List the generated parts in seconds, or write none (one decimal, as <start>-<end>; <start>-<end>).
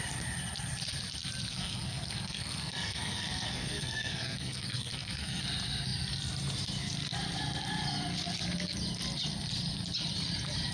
1.5-5.4